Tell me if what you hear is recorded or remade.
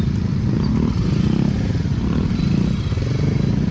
recorded